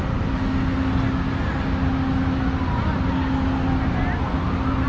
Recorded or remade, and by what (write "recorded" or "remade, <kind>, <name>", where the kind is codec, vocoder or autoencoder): recorded